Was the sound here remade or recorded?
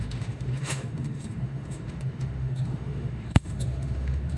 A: remade